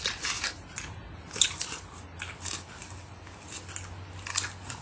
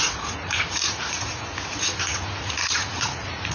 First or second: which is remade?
second